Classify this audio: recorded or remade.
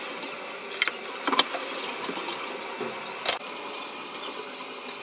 recorded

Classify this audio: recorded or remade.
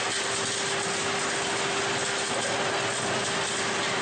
recorded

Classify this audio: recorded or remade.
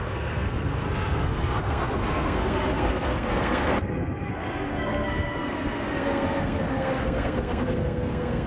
remade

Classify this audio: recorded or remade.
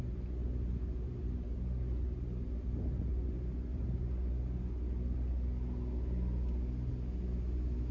recorded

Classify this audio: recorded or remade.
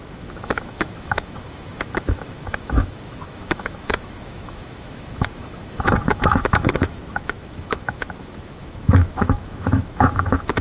remade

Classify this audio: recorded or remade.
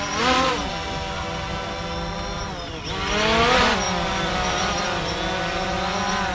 recorded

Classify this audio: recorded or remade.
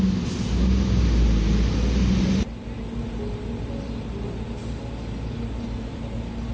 recorded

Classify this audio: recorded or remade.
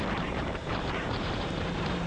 remade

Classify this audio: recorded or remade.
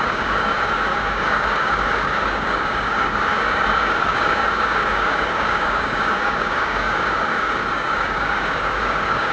remade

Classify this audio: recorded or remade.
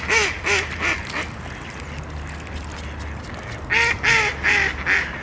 recorded